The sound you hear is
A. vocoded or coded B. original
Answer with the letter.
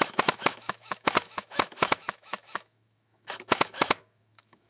A